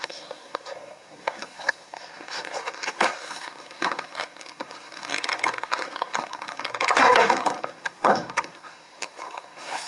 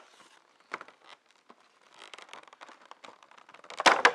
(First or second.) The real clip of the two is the second